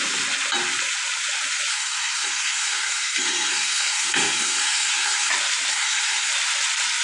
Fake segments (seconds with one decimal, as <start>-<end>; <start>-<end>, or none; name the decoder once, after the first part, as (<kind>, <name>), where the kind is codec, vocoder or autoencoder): 1.7-5.3 (codec, SNAC); 5.7-6.3